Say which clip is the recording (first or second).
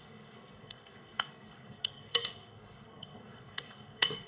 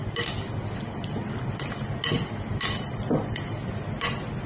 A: second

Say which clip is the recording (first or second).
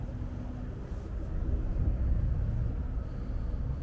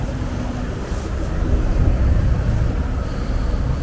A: first